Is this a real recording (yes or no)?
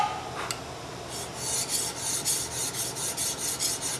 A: yes